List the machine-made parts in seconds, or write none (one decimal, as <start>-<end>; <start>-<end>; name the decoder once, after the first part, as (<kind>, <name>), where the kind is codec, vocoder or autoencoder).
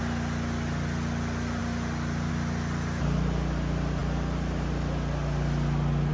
none